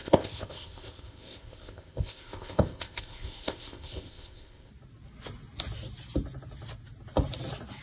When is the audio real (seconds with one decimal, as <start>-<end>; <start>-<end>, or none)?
4.7-7.8